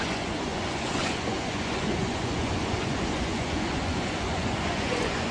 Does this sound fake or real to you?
fake